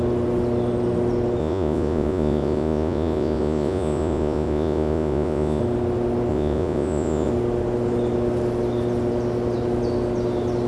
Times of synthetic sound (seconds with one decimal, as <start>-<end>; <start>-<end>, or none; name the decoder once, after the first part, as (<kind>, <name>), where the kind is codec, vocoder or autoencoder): 1.4-5.6 (vocoder, Vocos); 6.3-7.3